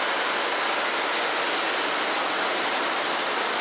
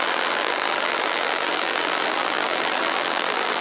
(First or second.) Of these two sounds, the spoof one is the second